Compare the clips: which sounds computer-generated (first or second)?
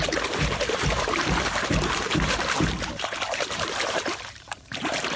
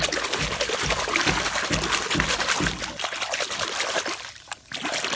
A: first